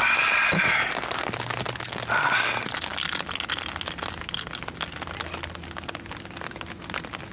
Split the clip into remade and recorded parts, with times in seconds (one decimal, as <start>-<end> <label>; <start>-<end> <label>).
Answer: 0.0-7.3 recorded